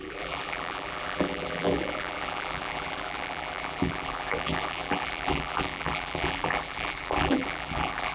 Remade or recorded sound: remade